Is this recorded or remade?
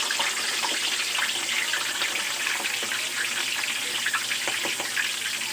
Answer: recorded